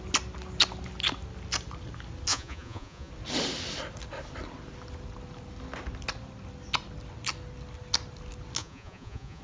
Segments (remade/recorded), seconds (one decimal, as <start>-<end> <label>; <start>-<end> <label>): 0.0-2.3 recorded; 2.3-3.1 remade; 3.1-8.6 recorded; 8.6-9.4 remade